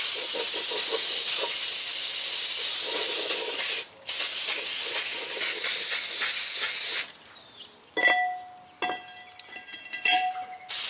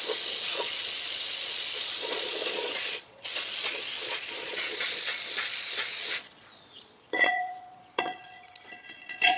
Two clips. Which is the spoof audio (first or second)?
second